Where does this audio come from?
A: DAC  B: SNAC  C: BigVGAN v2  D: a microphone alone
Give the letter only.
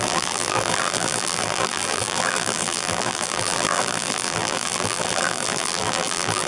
C